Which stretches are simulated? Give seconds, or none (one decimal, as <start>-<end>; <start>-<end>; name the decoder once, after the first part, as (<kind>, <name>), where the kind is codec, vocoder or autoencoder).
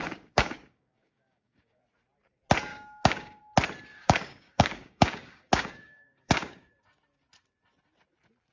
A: 0.0-1.8 (codec, DAC); 2.7-3.4; 3.9-6.7